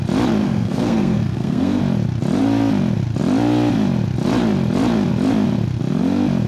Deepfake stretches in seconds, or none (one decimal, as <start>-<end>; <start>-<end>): 0.4-1.8